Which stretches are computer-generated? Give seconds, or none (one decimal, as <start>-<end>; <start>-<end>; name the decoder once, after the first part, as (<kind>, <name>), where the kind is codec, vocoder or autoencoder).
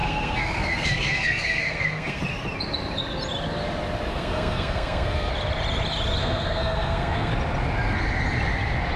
0.0-2.2 (codec, SNAC); 4.1-5.3; 6.2-7.3